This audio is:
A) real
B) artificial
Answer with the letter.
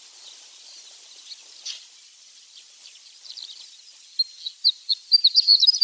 A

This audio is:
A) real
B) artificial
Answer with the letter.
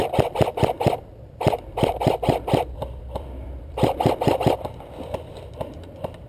B